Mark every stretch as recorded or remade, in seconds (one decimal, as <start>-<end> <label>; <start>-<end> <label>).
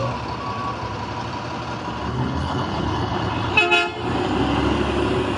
0.0-2.1 recorded; 2.1-3.5 remade; 3.5-5.4 recorded